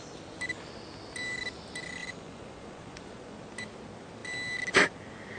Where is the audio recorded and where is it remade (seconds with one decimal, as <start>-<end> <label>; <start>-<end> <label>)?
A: 0.0-2.0 recorded; 2.0-3.4 remade; 3.4-5.4 recorded